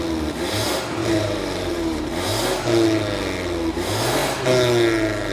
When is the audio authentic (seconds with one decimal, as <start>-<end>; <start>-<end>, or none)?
0.0-1.0; 2.1-5.3